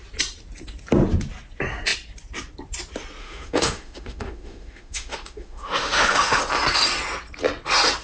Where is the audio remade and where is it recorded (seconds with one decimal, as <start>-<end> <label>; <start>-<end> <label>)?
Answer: 0.0-3.2 recorded; 3.2-6.4 remade; 6.4-8.0 recorded